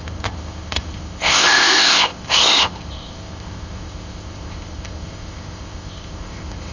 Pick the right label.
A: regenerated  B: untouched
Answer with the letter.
A